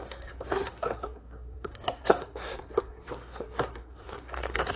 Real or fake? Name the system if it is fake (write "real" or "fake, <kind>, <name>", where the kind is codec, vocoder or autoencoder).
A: fake, codec, SNAC